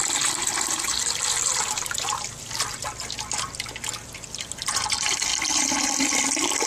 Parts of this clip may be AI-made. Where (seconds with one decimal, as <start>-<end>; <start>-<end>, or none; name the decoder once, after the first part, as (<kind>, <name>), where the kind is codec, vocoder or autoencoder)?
0.0-1.0 (vocoder, BigVGAN v2); 4.5-6.7

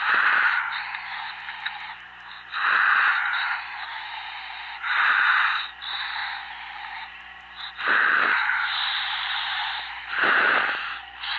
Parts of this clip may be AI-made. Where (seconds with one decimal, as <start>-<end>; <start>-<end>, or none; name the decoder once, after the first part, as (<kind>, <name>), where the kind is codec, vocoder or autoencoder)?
0.0-5.3 (vocoder, BigVGAN v2); 5.8-11.4

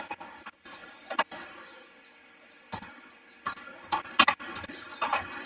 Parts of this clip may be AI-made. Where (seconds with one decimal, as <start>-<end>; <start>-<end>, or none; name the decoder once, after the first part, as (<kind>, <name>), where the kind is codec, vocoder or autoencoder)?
4.9-5.5 (vocoder, BigVGAN v2)

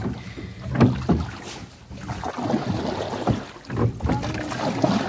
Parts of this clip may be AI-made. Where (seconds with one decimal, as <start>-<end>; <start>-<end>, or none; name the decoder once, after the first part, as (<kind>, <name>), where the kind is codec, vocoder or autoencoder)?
none

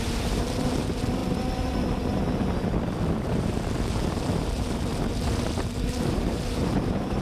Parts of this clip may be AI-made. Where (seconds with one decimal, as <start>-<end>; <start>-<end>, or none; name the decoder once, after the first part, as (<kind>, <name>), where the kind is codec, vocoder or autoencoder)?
0.0-1.2 (vocoder, BigVGAN v2); 3.1-4.9; 5.7-7.2

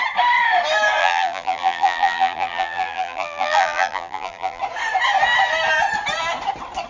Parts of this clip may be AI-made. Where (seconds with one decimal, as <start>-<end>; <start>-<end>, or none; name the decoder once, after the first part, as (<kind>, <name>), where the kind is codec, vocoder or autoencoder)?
1.0-4.6 (vocoder, BigVGAN v2)